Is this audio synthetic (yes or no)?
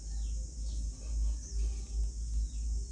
no